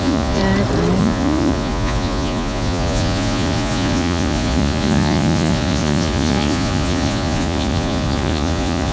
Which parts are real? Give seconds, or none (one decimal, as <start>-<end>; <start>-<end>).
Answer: 0.4-1.0